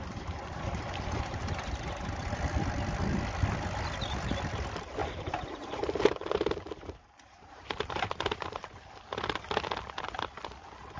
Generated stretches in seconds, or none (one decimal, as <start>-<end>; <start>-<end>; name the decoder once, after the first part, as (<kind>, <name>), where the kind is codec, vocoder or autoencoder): 5.0-8.8 (vocoder, BigVGAN v2)